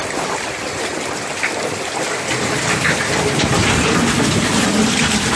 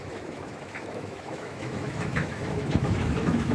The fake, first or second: second